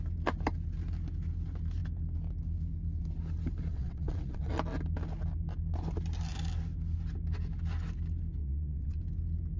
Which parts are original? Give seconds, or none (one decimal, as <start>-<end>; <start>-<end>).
0.0-3.7; 4.5-8.4; 9.0-9.6